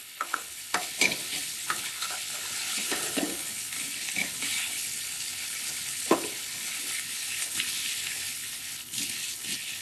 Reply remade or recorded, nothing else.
remade